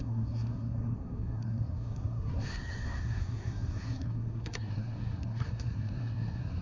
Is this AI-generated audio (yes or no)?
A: yes